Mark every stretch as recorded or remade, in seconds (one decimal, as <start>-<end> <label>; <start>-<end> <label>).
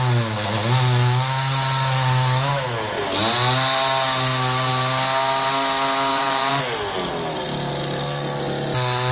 0.0-6.1 recorded; 6.1-6.6 remade; 6.6-9.1 recorded